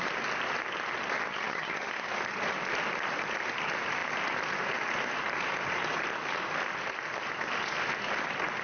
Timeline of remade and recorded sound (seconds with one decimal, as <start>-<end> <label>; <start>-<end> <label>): 0.0-1.3 recorded; 1.3-1.9 remade; 1.9-8.6 recorded